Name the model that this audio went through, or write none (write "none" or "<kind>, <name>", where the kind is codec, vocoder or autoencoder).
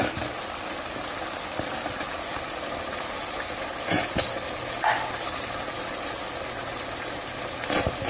none